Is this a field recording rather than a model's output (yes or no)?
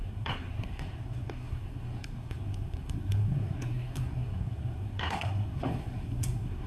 no